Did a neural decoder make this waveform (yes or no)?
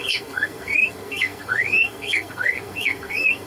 yes